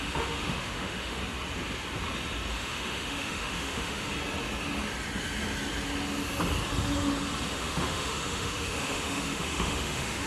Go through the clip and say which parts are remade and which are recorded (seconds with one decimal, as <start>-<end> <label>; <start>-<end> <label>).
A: 0.0-1.2 remade; 1.2-2.5 recorded; 2.5-4.1 remade; 4.1-7.5 recorded; 7.5-10.3 remade